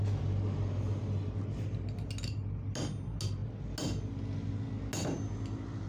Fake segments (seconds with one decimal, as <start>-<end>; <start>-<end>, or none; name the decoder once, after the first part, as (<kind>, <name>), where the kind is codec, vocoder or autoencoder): none